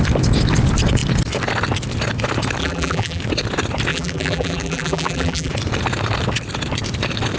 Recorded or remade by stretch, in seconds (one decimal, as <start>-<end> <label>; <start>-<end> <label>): 0.0-2.6 recorded; 2.6-3.2 remade; 3.2-3.9 recorded; 3.9-5.5 remade; 5.5-7.4 recorded